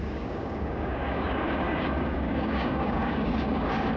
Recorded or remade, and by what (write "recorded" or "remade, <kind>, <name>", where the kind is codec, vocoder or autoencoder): remade, codec, DAC